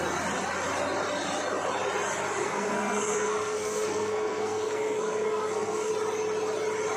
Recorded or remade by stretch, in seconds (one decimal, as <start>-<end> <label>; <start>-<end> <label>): 0.0-2.4 recorded; 2.4-5.9 remade; 5.9-7.0 recorded